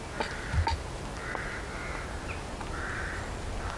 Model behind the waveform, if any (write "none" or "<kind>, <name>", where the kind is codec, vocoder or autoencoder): none